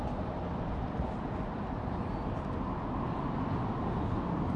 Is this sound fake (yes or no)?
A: no